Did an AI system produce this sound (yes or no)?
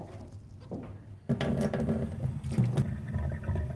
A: no